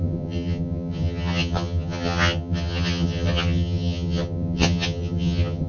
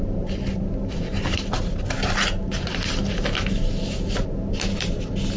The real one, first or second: second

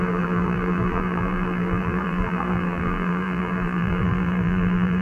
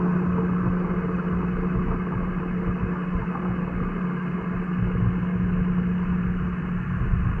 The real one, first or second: second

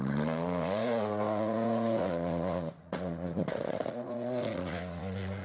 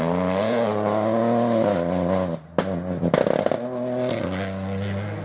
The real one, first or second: second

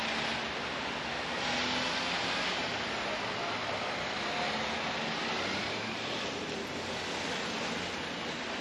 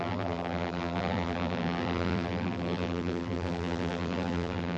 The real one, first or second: first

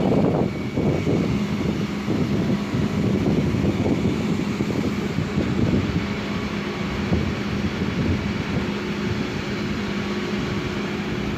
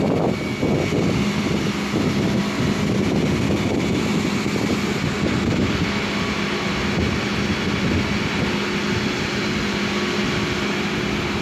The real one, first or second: second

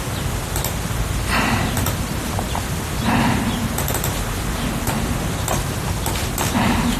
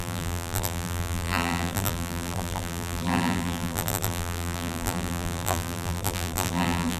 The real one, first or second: first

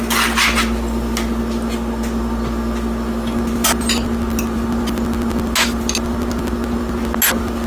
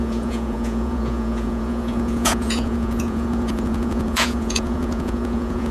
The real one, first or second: first